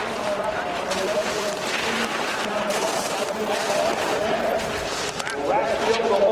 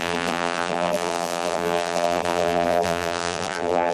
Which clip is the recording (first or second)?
first